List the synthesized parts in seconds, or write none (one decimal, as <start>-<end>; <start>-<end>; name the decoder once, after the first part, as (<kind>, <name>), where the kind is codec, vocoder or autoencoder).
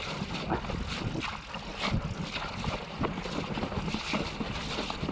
none